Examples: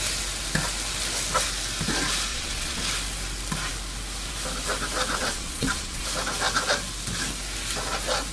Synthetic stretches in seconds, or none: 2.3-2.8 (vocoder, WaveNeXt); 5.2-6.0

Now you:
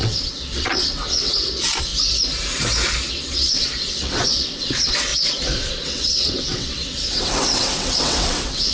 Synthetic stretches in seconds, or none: 0.0-1.9 (vocoder, WaveNeXt); 3.1-5.1; 5.8-8.7

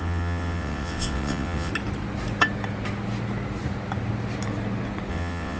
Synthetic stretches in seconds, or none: 0.0-1.7 (vocoder, WaveNeXt); 5.1-5.6

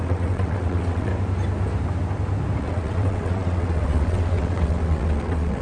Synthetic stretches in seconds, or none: 0.0-1.1 (vocoder, WaveNeXt); 2.6-5.6

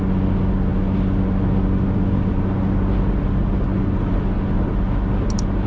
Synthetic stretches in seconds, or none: none

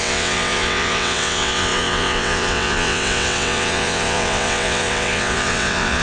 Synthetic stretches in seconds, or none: 0.0-6.0 (vocoder, WaveNeXt)

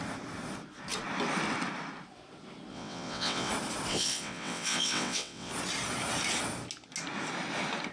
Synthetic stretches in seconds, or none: 2.7-3.5 (vocoder, WaveNeXt); 3.9-5.5